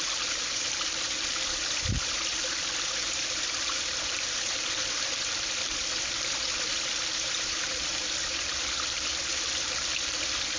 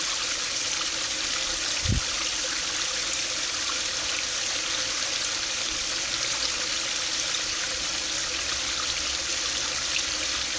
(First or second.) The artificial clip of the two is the first